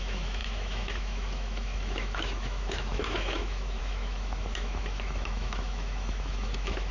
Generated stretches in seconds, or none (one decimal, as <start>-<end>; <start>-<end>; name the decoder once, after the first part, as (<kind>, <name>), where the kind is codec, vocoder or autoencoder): 0.0-6.9 (autoencoder, DAC-VAE)